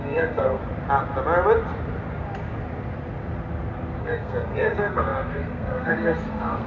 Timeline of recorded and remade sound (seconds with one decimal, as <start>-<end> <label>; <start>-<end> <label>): 0.0-0.6 remade; 0.6-4.0 recorded; 4.0-6.7 remade